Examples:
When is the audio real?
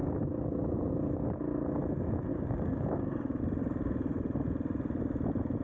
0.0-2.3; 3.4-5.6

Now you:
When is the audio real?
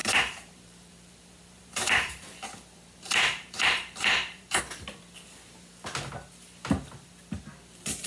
4.6-8.1